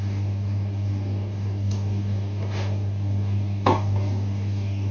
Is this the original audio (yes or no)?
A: no